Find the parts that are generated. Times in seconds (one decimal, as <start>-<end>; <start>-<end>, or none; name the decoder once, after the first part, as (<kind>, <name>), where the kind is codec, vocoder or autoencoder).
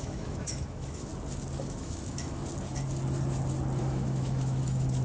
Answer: 0.0-1.1 (autoencoder, DAC-VAE); 1.6-2.4; 3.8-5.0